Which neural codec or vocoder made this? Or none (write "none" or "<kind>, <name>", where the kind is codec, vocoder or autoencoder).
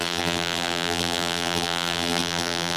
vocoder, BigVGAN v2